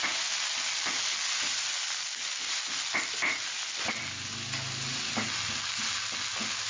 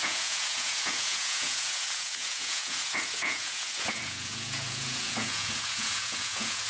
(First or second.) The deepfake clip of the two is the second